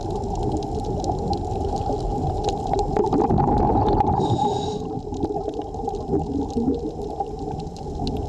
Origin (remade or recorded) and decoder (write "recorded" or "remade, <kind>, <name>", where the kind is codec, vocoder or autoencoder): recorded